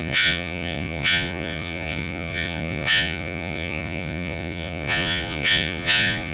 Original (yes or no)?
no